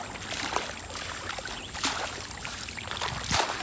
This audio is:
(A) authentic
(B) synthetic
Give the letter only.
A